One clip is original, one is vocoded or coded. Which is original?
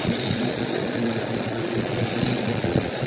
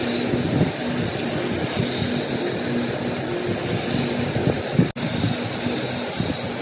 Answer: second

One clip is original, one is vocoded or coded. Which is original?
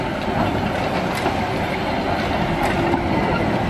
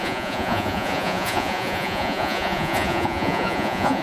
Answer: first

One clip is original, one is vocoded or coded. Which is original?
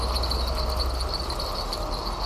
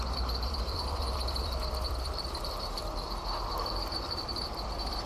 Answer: first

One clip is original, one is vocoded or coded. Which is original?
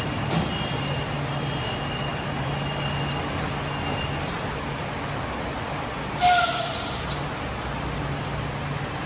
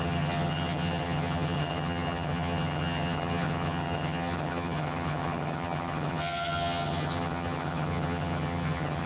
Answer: first